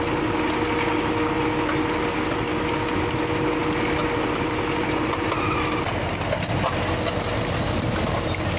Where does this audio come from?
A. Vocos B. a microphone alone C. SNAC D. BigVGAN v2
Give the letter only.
B